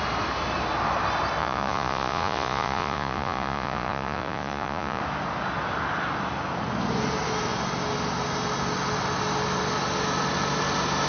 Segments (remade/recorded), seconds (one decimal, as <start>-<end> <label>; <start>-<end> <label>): 0.0-1.4 recorded; 1.4-5.0 remade; 5.0-11.1 recorded